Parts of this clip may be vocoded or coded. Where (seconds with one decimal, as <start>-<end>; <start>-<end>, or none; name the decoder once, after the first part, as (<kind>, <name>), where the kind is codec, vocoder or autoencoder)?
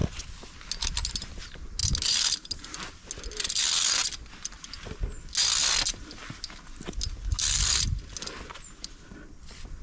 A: none